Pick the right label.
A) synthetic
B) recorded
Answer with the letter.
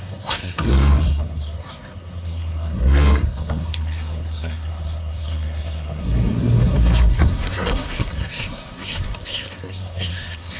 A